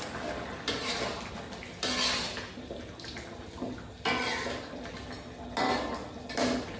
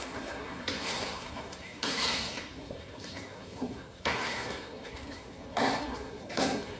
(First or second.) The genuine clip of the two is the first